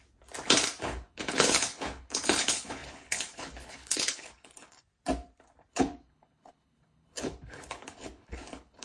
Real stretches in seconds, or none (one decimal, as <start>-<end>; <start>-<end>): 0.0-0.8; 4.8-5.7